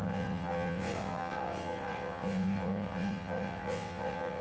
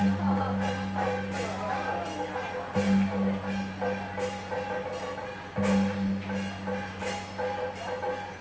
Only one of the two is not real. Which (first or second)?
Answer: first